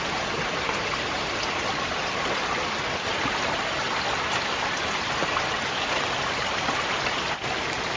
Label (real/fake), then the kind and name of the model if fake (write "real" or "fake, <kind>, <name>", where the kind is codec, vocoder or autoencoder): real